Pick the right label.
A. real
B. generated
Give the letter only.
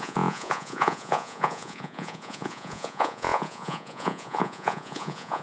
B